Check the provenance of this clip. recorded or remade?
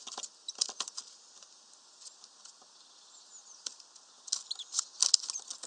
recorded